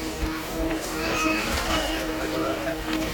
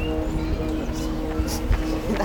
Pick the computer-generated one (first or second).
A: first